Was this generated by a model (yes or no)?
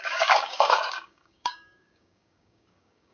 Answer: yes